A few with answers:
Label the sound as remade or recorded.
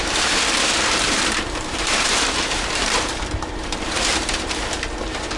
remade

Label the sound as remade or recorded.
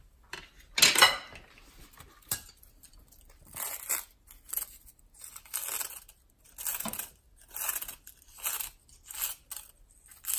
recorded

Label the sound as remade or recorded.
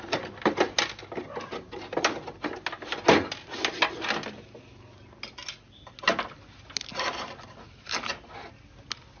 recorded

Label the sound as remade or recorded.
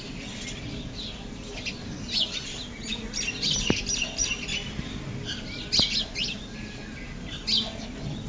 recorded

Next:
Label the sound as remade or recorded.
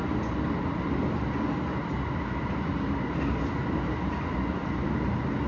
recorded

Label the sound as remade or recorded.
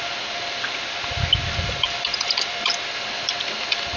recorded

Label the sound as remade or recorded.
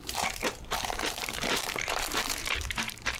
remade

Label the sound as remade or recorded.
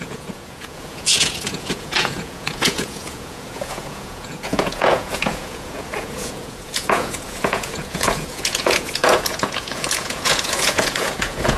remade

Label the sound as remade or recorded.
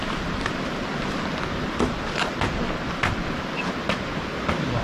recorded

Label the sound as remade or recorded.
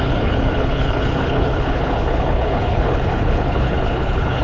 remade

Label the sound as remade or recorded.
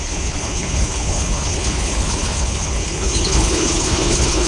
remade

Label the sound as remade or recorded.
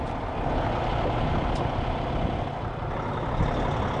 recorded